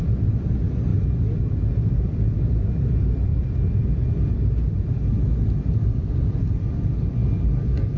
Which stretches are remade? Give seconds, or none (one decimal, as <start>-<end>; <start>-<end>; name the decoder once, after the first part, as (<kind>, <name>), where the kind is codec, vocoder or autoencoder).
0.0-0.9 (vocoder, BigVGAN v2); 1.7-8.0